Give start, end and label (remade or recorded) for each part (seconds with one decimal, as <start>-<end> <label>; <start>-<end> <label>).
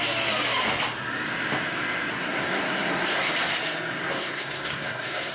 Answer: 0.0-2.1 recorded; 2.1-3.3 remade; 3.3-3.9 recorded; 3.9-5.3 remade